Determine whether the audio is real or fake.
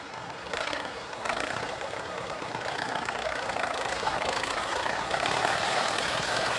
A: fake